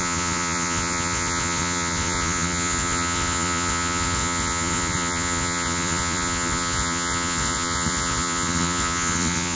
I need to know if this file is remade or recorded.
remade